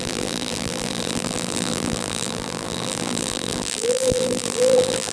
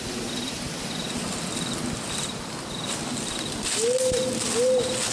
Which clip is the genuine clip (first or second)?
second